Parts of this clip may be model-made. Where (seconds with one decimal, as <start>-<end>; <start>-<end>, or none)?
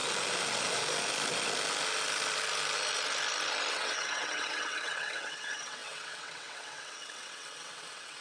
3.7-8.2